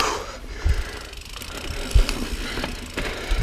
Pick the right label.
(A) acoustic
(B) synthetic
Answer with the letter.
A